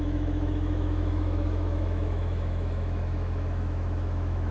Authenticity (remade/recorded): remade